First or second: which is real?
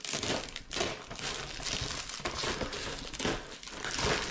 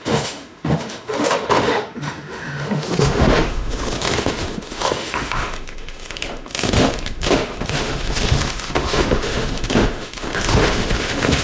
first